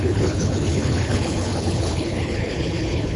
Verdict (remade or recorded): remade